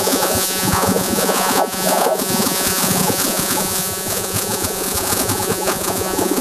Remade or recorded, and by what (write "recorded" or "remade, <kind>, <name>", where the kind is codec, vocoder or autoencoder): remade, vocoder, Vocos